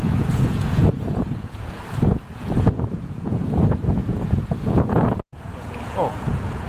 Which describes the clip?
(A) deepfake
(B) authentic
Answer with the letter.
A